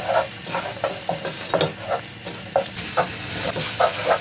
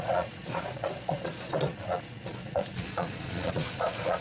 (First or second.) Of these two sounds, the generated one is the second